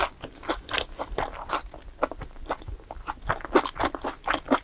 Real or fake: real